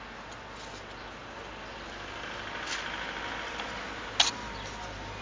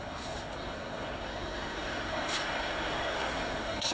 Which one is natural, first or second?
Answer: first